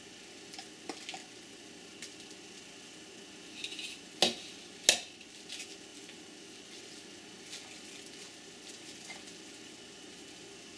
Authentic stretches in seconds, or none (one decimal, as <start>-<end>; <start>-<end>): 0.0-10.8